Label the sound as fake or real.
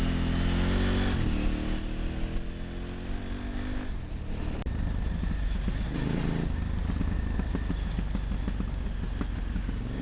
real